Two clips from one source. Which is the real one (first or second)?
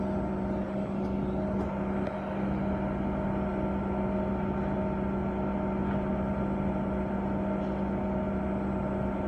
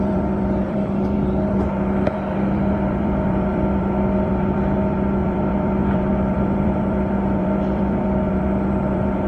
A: first